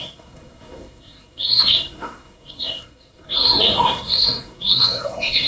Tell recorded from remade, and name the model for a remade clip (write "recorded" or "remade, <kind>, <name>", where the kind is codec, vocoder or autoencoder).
remade, codec, SNAC